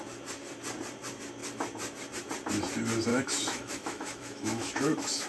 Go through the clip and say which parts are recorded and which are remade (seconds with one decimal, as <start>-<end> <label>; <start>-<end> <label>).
0.0-3.1 recorded; 3.1-5.3 remade